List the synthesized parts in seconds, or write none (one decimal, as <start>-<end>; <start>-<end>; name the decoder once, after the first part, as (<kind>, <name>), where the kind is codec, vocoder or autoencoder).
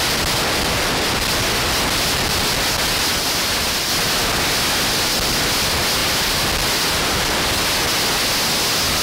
3.1-3.9 (vocoder, BigVGAN v2)